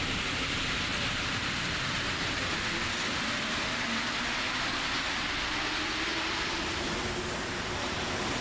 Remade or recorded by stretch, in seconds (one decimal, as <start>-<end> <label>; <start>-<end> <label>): 0.0-0.9 recorded; 0.9-2.2 remade; 2.2-6.1 recorded; 6.1-6.8 remade; 6.8-8.4 recorded